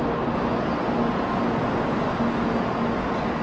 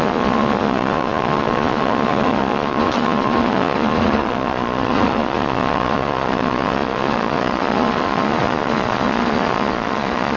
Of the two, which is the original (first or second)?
first